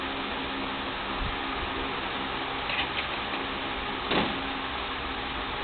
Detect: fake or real real